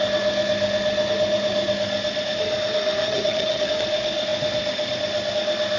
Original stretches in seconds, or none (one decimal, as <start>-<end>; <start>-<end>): 0.0-3.0; 3.7-5.8